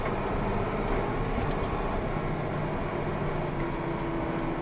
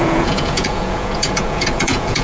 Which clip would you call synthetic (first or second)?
second